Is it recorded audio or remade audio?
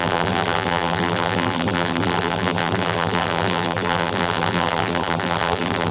remade